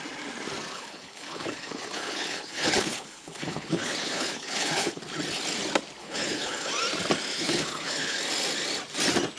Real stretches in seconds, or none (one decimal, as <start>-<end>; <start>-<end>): 0.0-0.7; 5.0-6.0; 6.7-7.3; 8.2-9.4